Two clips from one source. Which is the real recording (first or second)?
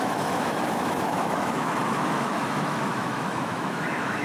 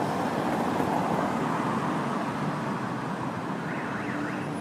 second